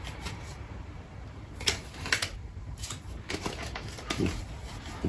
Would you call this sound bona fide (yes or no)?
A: no